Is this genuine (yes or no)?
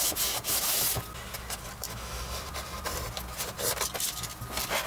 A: yes